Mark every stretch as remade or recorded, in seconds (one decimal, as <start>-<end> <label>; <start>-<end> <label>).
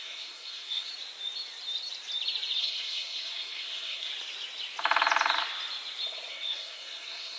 0.0-0.9 remade; 0.9-2.6 recorded; 2.6-4.1 remade; 4.1-6.3 recorded; 6.3-7.4 remade